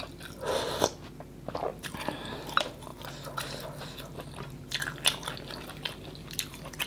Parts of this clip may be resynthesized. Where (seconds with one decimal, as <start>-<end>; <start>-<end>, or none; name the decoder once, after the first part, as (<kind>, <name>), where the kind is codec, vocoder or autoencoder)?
1.7-2.4 (vocoder, BigVGAN v2)